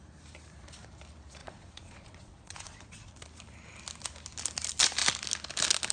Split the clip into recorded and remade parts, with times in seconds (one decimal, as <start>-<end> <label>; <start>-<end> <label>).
0.0-1.4 recorded; 1.4-3.1 remade; 3.1-5.9 recorded